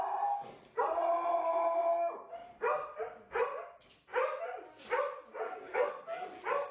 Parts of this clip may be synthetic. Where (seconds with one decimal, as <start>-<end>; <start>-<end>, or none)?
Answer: 5.4-5.9